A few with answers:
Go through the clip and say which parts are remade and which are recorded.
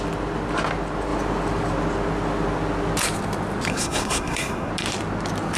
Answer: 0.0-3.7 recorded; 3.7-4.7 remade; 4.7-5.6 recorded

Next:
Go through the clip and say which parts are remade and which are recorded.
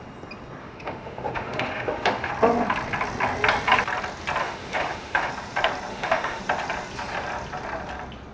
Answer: 0.0-0.6 recorded; 0.6-2.3 remade; 2.3-4.4 recorded; 4.4-5.3 remade; 5.3-5.9 recorded; 5.9-6.4 remade; 6.4-8.3 recorded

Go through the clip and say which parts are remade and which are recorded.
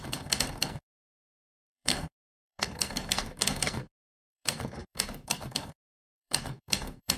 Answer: 0.0-7.2 remade